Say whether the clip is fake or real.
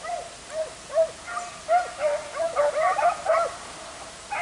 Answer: real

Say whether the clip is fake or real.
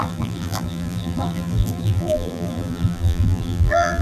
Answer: fake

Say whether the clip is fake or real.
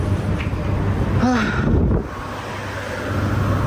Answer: real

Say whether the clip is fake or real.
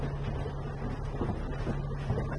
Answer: real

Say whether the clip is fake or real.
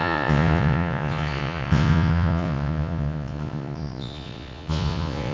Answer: fake